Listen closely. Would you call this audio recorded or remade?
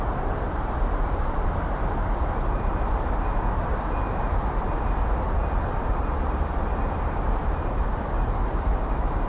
remade